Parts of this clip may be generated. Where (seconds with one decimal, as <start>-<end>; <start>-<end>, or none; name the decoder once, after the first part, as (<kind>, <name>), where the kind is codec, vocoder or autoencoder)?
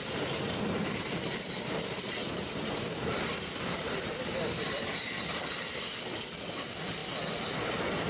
none